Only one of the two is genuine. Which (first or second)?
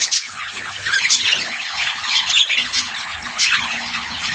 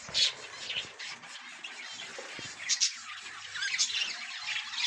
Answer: second